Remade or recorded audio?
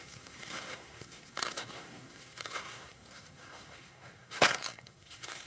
remade